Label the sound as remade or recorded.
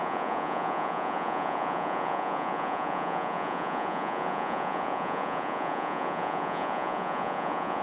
remade